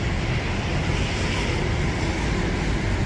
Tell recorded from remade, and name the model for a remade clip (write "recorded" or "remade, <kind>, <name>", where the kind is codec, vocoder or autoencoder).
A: recorded